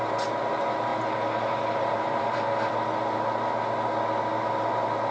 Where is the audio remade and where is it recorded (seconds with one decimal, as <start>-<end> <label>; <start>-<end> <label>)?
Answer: 0.0-0.9 recorded; 0.9-2.7 remade; 2.7-5.1 recorded